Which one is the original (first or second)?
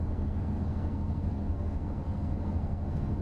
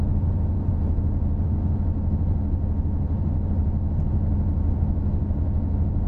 second